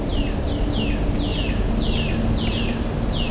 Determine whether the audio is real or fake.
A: real